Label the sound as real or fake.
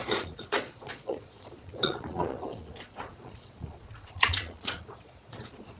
fake